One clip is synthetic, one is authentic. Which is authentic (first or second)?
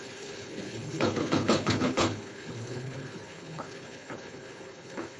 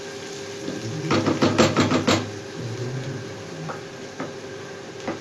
second